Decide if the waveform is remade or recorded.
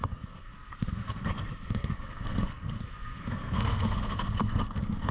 remade